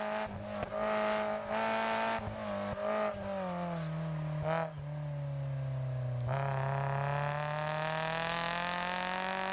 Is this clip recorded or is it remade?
recorded